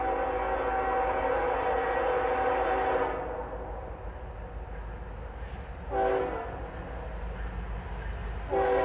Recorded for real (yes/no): yes